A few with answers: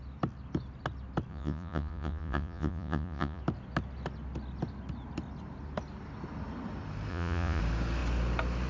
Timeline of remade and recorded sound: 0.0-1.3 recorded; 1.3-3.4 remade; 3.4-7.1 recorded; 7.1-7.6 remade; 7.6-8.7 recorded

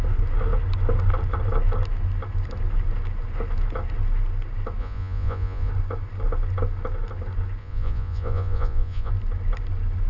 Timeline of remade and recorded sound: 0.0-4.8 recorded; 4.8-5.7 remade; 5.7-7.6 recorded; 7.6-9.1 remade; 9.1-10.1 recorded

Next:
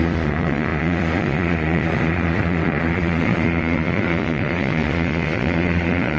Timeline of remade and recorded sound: 0.0-6.2 remade